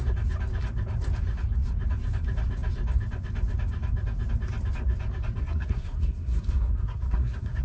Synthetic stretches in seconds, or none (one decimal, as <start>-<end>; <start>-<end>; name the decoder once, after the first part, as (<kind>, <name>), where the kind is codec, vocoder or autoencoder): 5.4-7.6 (codec, SNAC)